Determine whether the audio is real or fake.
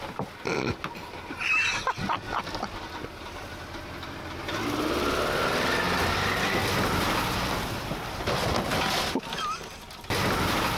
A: real